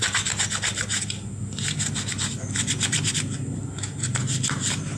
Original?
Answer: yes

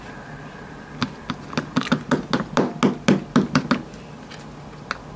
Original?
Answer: yes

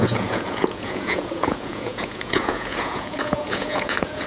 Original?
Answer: no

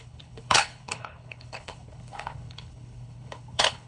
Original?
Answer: no